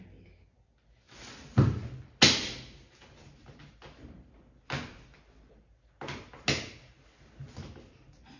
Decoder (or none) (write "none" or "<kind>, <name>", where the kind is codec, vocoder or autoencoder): none